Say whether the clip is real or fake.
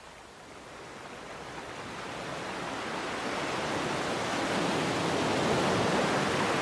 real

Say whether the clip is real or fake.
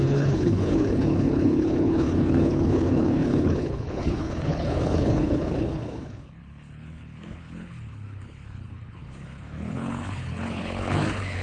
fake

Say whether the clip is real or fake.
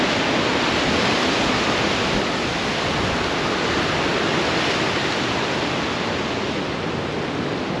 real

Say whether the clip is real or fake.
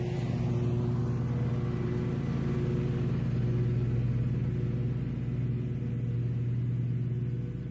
real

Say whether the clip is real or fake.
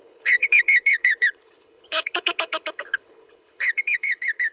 fake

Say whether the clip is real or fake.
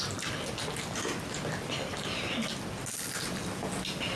real